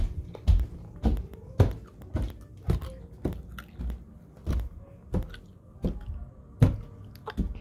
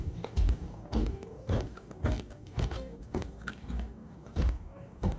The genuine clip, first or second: first